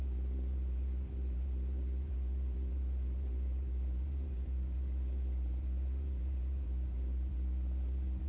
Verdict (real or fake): fake